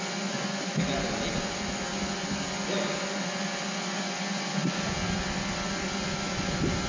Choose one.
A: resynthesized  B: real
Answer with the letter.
B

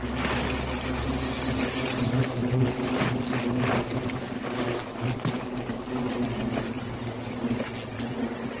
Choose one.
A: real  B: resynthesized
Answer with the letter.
A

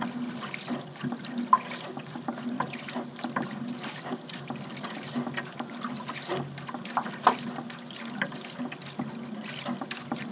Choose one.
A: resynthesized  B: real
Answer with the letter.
B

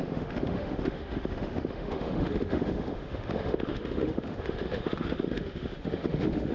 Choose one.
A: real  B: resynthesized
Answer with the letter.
B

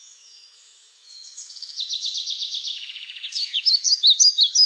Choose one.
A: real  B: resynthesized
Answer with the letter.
B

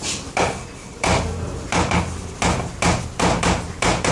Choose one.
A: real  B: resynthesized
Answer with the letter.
A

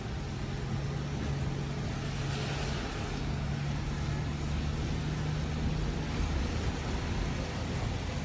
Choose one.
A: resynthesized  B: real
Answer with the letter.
B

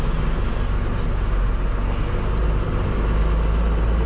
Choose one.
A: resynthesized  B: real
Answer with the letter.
B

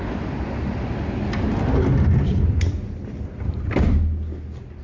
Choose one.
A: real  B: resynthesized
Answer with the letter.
A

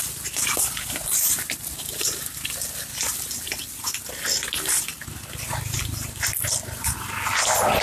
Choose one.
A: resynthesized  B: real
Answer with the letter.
B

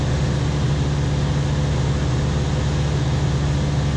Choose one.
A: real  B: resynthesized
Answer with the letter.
A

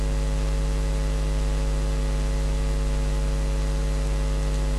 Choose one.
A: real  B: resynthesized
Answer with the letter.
A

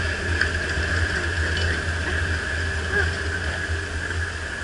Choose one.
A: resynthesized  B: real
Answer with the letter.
B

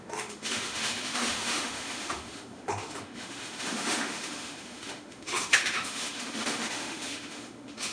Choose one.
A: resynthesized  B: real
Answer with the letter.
A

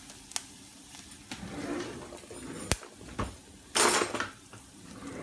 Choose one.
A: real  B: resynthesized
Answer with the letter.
A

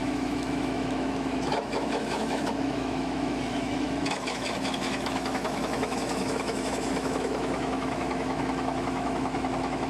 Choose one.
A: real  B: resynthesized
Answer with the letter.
B